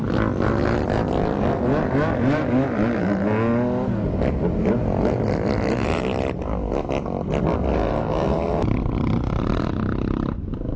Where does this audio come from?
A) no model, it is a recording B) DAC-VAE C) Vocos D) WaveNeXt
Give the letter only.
A